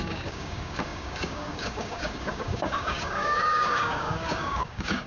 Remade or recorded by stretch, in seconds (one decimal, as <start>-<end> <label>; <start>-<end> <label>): 0.0-5.1 remade